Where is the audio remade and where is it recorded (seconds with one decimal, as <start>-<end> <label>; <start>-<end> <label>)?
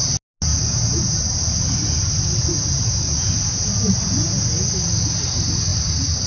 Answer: 0.0-5.7 recorded; 5.7-6.3 remade